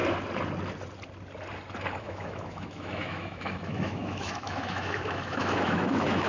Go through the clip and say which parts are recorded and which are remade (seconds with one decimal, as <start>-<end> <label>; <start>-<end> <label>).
0.0-2.0 recorded; 2.0-6.3 remade